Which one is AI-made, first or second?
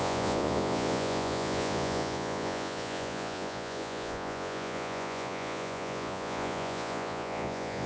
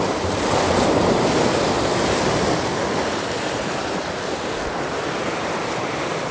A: first